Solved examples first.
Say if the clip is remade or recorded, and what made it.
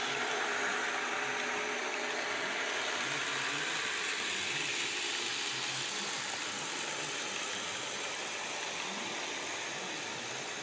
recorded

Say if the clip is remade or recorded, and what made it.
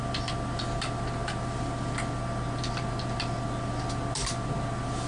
recorded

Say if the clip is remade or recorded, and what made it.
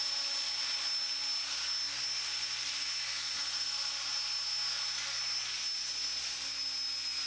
recorded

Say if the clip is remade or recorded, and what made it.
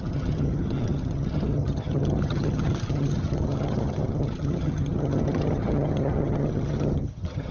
remade, vocoder, HiFi-GAN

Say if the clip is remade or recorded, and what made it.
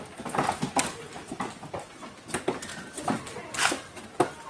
recorded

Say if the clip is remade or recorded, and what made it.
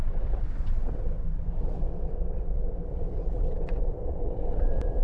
remade, vocoder, WaveNeXt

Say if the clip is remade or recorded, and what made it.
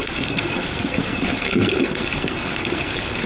remade, codec, SNAC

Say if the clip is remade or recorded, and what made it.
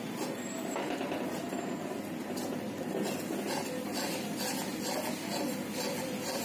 recorded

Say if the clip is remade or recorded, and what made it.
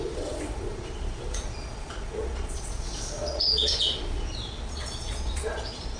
remade, vocoder, Vocos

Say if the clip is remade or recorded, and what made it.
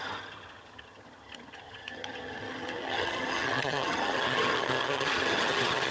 remade, vocoder, HiFi-GAN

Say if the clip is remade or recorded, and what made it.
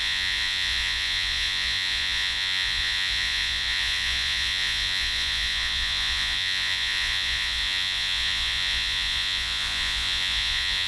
remade, vocoder, Vocos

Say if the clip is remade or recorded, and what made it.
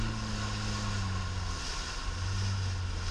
recorded